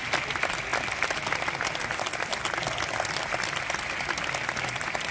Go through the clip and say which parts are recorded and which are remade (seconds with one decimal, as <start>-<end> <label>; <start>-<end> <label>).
0.0-5.1 recorded